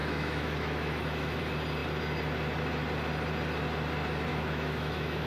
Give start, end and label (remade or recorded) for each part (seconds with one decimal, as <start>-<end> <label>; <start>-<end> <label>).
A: 0.0-1.4 remade; 1.4-4.3 recorded; 4.3-5.3 remade